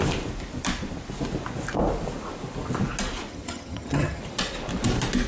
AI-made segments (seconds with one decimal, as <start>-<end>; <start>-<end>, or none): 3.3-4.2